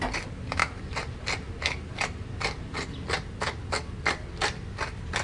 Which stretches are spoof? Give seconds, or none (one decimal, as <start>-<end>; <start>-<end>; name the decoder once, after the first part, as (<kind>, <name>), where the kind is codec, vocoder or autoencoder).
none